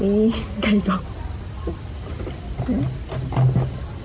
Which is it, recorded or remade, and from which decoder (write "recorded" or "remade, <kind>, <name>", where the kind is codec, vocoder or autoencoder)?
recorded